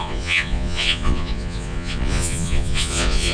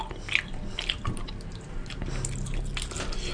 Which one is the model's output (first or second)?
first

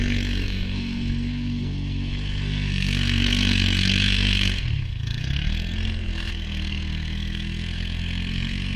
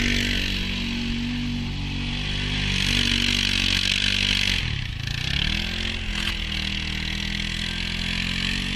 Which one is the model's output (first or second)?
first